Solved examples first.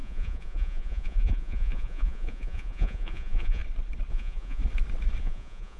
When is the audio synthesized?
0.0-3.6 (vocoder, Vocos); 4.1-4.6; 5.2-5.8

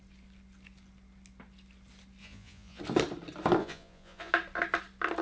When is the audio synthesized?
2.2-2.8 (vocoder, Vocos); 3.6-4.3